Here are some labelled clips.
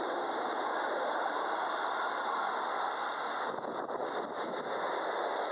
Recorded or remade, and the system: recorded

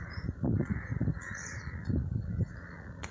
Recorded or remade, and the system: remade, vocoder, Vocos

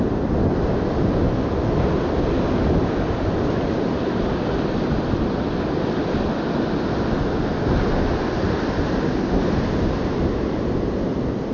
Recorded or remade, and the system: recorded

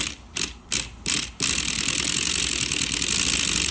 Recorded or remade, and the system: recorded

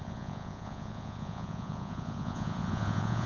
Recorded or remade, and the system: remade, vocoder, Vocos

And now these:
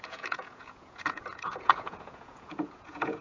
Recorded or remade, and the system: remade, vocoder, Vocos